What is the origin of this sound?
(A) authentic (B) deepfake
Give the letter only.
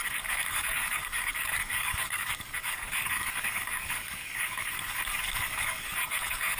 B